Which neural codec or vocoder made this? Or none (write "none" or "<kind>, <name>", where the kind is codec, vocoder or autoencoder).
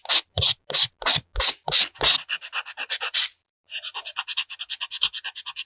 none